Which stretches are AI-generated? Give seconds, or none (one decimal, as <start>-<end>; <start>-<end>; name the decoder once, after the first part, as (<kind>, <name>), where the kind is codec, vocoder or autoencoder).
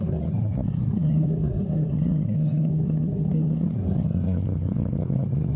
0.0-5.6 (codec, SNAC)